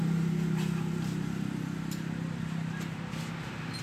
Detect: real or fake real